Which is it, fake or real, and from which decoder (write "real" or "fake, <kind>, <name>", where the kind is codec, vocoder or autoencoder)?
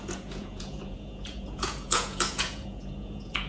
fake, vocoder, Vocos